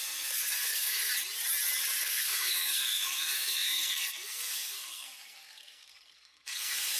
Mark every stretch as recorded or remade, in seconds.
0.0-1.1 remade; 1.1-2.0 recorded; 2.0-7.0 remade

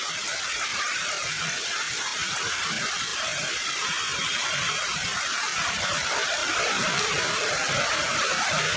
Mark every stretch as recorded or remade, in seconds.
0.0-6.4 recorded; 6.4-7.7 remade; 7.7-8.8 recorded

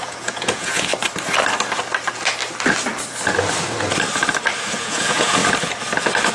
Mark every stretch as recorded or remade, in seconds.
0.0-0.9 remade; 0.9-4.7 recorded; 4.7-5.4 remade; 5.4-6.3 recorded

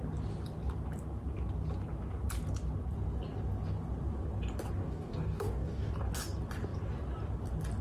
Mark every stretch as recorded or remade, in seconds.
0.0-4.8 recorded; 4.8-5.9 remade; 5.9-7.8 recorded

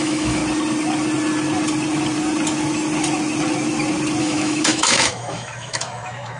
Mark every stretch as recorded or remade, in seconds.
0.0-0.4 remade; 0.4-4.2 recorded; 4.2-6.4 remade

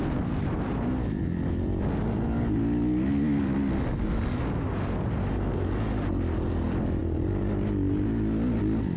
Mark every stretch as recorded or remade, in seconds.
0.0-9.0 recorded